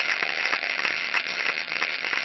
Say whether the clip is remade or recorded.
remade